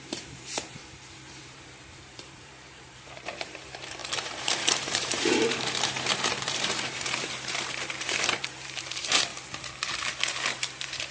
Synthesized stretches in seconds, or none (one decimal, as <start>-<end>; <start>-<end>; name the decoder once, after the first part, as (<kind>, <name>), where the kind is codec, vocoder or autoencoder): 0.0-9.3 (vocoder, BigVGAN v2); 10.3-11.1